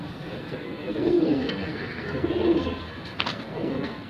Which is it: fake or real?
fake